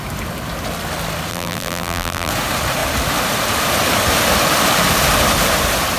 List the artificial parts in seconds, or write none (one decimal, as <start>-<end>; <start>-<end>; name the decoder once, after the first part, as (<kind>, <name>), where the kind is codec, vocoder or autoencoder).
1.3-2.3 (vocoder, BigVGAN v2)